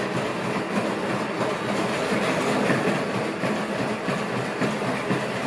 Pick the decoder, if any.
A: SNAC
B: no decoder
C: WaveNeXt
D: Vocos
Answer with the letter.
B